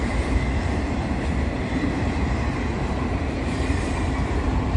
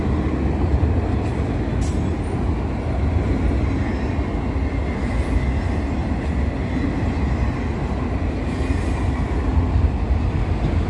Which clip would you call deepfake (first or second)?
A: first